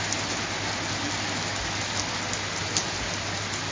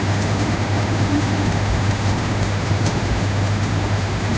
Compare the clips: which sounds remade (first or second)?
second